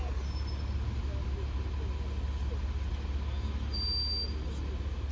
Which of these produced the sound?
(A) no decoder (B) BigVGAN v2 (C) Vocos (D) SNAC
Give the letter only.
A